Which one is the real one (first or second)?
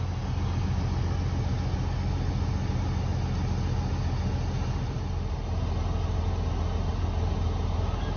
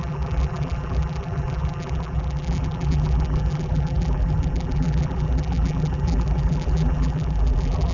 first